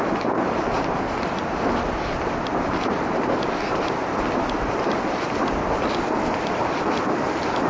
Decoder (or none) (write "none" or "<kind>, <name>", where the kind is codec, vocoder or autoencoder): none